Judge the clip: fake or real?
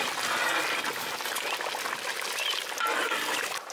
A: real